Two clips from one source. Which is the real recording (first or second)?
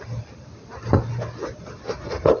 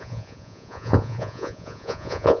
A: first